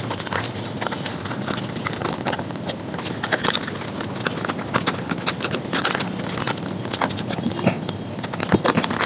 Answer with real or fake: real